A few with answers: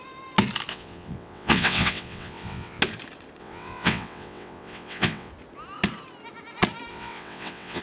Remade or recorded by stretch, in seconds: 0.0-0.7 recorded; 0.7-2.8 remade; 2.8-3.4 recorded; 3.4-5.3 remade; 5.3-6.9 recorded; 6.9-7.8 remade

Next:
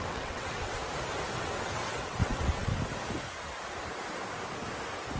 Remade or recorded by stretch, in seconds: 0.0-0.8 remade; 0.8-1.4 recorded; 1.4-2.7 remade; 2.7-5.2 recorded

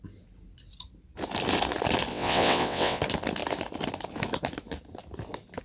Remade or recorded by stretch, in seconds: 0.0-2.1 recorded; 2.1-3.0 remade; 3.0-5.6 recorded

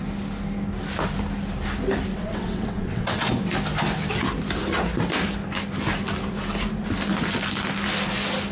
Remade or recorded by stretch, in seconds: 0.0-2.1 recorded; 2.1-3.3 remade; 3.3-8.5 recorded

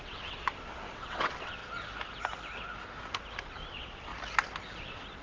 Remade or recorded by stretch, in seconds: 0.0-1.6 remade; 1.6-3.4 recorded; 3.4-4.1 remade; 4.1-4.8 recorded; 4.8-5.2 remade

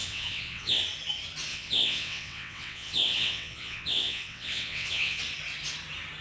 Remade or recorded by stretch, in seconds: 0.0-0.8 remade; 0.8-1.5 recorded; 1.5-5.2 remade; 5.2-6.2 recorded

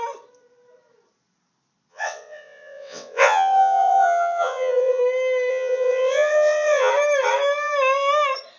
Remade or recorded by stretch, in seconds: 0.0-1.9 recorded; 1.9-5.0 remade; 5.0-5.5 recorded; 5.5-6.9 remade; 6.9-8.6 recorded